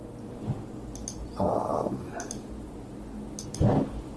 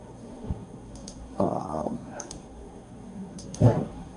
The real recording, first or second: first